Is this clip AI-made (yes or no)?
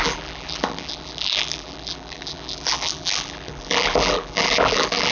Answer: yes